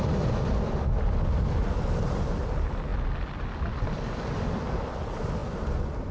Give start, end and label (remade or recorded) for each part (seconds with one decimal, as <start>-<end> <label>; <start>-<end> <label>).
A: 0.0-6.1 recorded